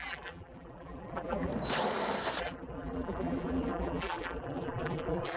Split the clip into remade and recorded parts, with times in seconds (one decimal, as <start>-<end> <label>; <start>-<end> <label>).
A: 0.0-1.5 remade; 1.5-2.4 recorded; 2.4-5.4 remade